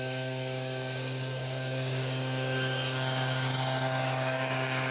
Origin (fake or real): fake